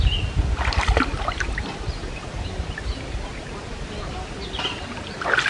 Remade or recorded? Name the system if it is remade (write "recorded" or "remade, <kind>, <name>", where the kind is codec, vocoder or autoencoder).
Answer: recorded